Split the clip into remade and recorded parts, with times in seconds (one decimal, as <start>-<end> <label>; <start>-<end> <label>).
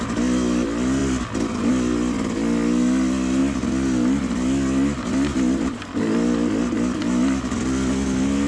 0.0-8.5 recorded